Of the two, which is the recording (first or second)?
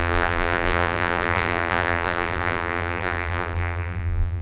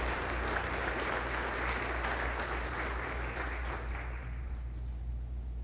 second